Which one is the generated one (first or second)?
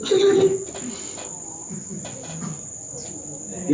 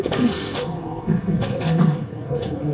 second